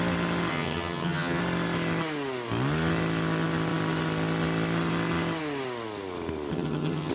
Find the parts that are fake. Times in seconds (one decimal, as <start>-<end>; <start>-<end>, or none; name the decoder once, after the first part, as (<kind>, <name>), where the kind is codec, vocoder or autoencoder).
0.5-1.4 (vocoder, HiFi-GAN); 6.5-7.1